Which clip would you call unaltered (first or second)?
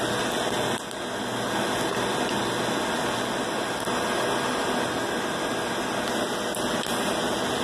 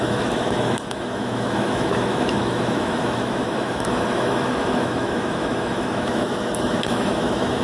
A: first